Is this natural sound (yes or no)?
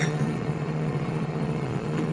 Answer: no